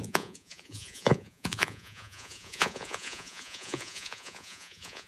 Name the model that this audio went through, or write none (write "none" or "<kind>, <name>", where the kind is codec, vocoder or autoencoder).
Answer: vocoder, Vocos